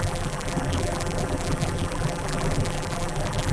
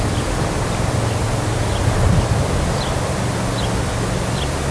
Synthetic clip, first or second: first